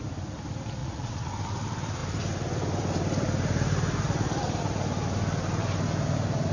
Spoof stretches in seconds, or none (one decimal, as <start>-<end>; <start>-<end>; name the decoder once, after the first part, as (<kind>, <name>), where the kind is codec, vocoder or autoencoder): 0.8-1.3 (vocoder, Vocos)